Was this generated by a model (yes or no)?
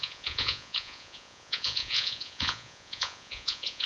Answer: yes